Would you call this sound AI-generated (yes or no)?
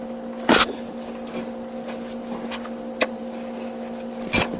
no